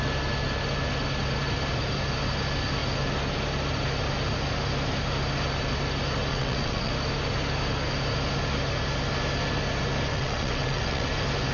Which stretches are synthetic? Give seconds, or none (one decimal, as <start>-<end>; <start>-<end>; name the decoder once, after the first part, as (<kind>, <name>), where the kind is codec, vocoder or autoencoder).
6.3-6.9 (vocoder, WaveNeXt); 10.1-11.1